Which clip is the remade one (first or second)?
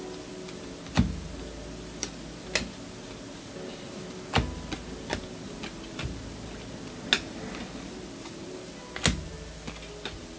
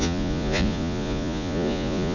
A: second